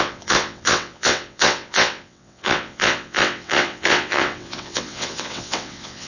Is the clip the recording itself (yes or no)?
no